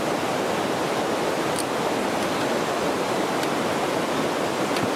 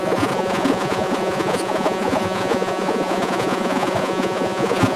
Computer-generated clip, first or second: second